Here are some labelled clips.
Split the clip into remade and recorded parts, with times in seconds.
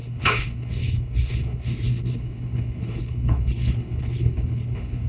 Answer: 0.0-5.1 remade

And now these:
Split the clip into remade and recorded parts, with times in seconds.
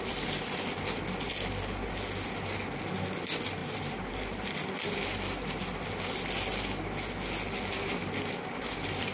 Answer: 0.0-3.6 recorded; 3.6-4.1 remade; 4.1-9.1 recorded